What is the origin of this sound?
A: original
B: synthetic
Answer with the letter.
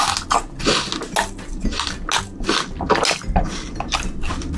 A